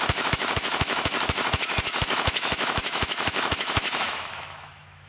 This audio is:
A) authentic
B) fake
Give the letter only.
B